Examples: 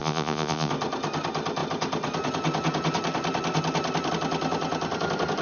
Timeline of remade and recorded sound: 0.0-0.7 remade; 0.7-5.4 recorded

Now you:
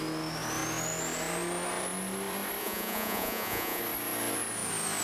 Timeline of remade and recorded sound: 0.0-2.6 recorded; 2.6-3.8 remade; 3.8-5.0 recorded

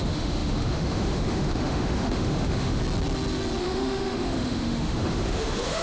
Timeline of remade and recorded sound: 0.0-2.8 remade; 2.8-3.6 recorded; 3.6-5.8 remade

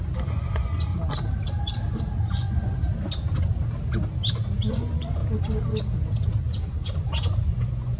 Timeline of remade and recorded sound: 0.0-0.9 remade; 0.9-2.3 recorded; 2.3-2.8 remade; 2.8-4.7 recorded; 4.7-5.2 remade; 5.2-6.4 recorded; 6.4-8.0 remade